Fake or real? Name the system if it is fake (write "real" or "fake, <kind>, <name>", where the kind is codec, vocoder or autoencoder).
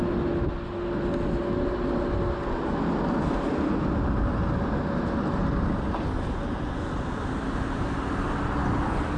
real